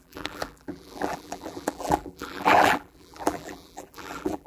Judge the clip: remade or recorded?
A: remade